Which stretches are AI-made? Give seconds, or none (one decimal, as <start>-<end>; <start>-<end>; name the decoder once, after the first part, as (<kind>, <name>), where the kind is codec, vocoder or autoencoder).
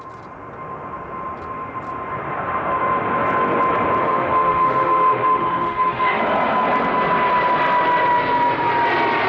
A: 4.0-6.2 (autoencoder, DAC-VAE)